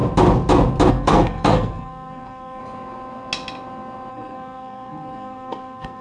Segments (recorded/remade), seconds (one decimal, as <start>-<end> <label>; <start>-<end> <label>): 0.0-0.9 recorded; 0.9-2.6 remade; 2.6-4.1 recorded; 4.1-6.0 remade